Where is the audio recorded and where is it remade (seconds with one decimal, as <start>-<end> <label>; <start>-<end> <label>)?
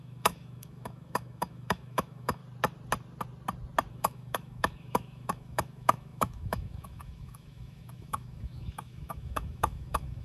0.0-2.4 remade; 2.4-3.9 recorded; 3.9-10.2 remade